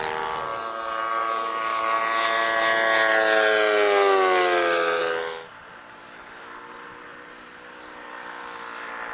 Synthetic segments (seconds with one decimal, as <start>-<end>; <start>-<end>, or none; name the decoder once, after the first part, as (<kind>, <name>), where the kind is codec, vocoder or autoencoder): none